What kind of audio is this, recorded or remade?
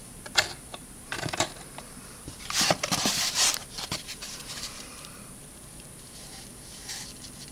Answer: remade